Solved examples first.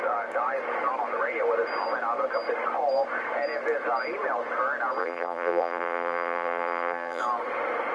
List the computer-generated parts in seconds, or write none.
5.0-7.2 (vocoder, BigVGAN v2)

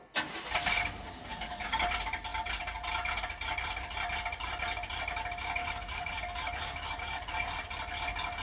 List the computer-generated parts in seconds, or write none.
1.3-1.9 (codec, DAC); 5.6-7.3